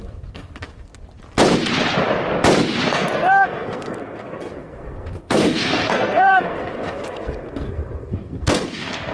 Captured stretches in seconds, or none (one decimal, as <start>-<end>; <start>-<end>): 0.9-2.9